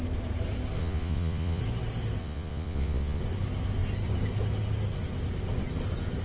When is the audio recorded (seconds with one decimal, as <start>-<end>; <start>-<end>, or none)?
0.0-0.8; 1.6-2.2; 3.2-6.2